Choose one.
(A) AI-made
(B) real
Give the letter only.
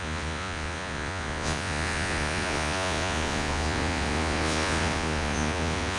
A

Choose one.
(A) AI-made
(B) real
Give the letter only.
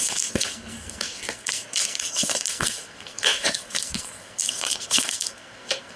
A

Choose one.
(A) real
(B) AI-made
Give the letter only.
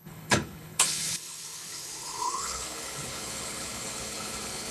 B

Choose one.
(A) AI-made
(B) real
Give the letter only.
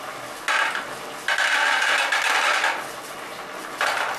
B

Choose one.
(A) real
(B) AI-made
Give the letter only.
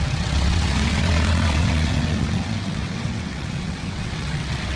B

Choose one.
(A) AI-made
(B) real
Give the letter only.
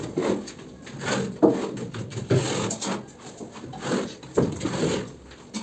B